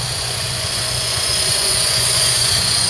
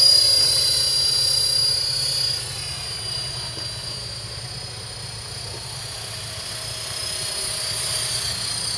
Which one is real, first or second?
second